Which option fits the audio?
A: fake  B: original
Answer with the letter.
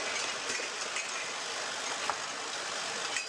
B